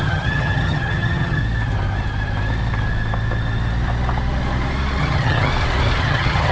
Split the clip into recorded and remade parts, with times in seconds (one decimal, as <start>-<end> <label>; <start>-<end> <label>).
0.0-1.4 remade; 1.4-5.0 recorded; 5.0-5.5 remade; 5.5-6.0 recorded; 6.0-6.5 remade